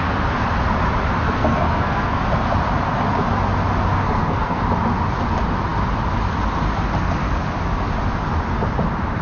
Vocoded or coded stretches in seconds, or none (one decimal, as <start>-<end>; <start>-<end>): 1.4-2.2; 4.0-4.6